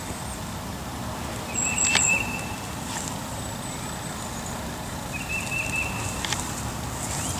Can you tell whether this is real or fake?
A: real